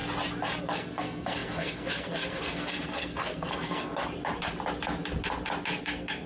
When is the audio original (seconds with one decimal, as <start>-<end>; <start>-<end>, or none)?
0.0-0.6; 4.0-5.8